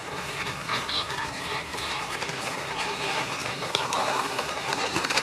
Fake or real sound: fake